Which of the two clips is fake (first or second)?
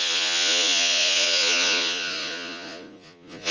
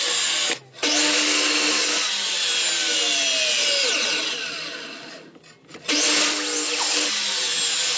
first